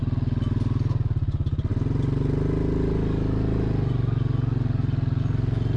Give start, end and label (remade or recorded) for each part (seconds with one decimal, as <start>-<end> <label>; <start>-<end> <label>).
0.0-5.8 recorded